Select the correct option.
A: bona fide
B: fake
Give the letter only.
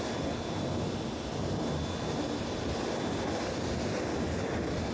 A